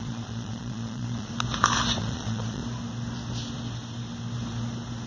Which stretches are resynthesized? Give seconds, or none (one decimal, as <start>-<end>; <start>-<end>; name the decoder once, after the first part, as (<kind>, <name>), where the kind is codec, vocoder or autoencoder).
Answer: 0.0-1.3 (vocoder, Vocos); 2.0-2.6